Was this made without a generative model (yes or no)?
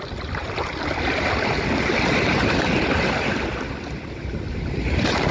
yes